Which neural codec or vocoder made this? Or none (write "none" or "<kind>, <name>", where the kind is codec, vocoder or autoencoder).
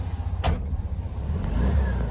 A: none